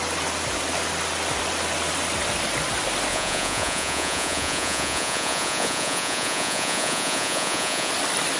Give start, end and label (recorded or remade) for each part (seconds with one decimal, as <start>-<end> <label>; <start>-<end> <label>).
0.0-3.1 recorded; 3.1-7.9 remade; 7.9-8.4 recorded